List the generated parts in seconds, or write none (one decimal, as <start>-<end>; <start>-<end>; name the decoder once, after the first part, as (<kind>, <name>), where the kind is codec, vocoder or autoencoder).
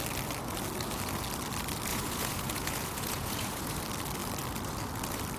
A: 1.9-3.8 (vocoder, Vocos)